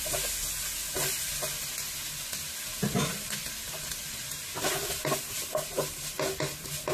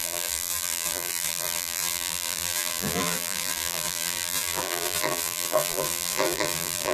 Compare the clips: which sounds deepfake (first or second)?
second